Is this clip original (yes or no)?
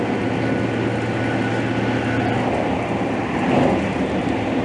yes